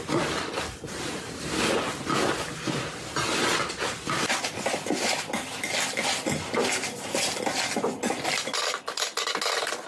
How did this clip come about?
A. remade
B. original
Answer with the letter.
B